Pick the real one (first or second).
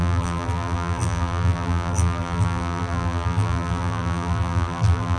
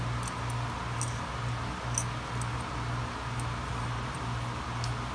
second